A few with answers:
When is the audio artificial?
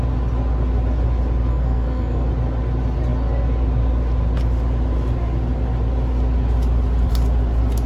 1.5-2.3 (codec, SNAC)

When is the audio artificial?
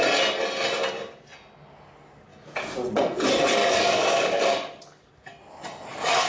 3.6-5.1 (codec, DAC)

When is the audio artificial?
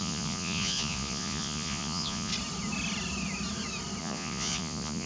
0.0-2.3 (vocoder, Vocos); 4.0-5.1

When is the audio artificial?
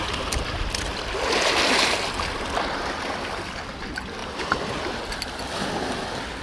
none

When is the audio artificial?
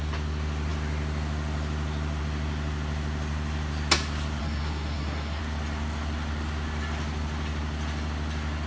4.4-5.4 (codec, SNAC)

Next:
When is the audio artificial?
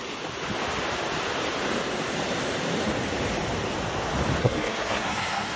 4.4-5.6 (codec, SNAC)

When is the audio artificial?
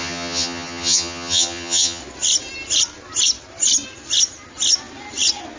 0.0-2.0 (vocoder, HiFi-GAN)